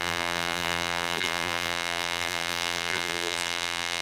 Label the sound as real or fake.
fake